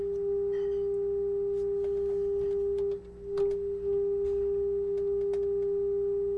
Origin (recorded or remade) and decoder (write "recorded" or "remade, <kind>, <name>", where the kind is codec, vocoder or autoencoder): recorded